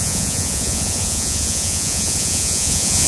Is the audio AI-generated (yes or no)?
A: yes